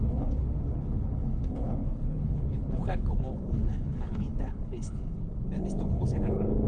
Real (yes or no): no